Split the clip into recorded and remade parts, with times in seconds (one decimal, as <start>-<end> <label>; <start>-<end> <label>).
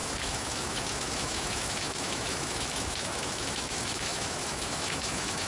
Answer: 0.0-5.5 remade